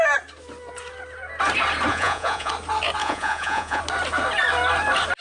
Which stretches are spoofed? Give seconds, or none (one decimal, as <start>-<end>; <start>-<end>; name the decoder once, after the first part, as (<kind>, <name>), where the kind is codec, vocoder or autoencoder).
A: 1.9-2.5 (vocoder, Vocos); 3.0-3.8